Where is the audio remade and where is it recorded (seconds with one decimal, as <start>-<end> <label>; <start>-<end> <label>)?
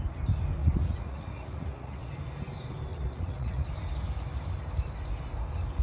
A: 0.0-0.6 recorded; 0.6-2.1 remade; 2.1-2.9 recorded; 2.9-3.7 remade; 3.7-5.8 recorded